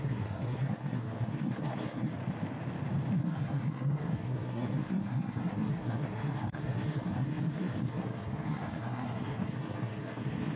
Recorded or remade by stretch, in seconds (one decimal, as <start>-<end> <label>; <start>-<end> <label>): 0.0-2.1 remade; 2.1-3.2 recorded; 3.2-10.6 remade